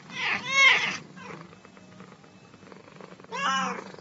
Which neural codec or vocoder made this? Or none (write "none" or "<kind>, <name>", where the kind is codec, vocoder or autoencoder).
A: none